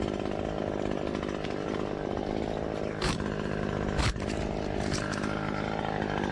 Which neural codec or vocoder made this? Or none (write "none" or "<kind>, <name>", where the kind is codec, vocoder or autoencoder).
none